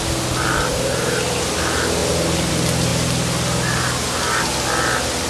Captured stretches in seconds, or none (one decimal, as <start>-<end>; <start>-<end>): 0.0-5.3